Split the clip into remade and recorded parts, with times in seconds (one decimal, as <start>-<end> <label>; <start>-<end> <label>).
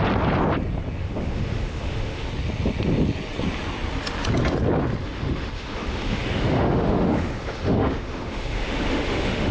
0.0-1.0 recorded; 1.0-2.3 remade; 2.3-5.0 recorded; 5.0-9.5 remade